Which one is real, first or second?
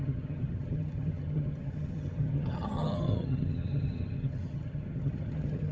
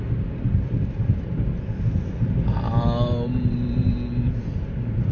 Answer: second